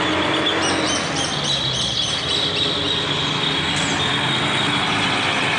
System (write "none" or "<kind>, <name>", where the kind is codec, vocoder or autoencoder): none